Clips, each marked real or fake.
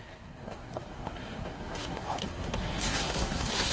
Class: fake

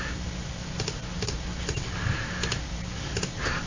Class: real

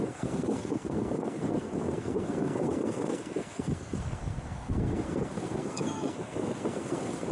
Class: fake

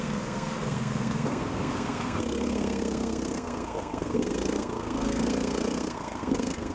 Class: fake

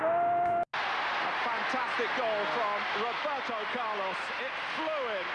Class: real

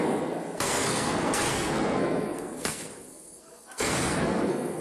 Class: fake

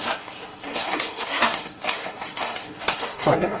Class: fake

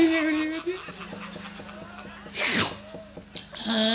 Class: real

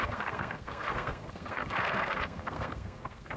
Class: fake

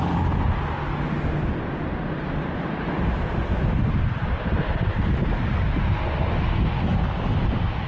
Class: real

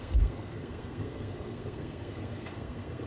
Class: fake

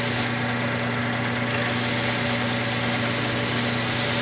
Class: real